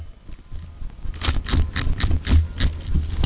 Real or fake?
real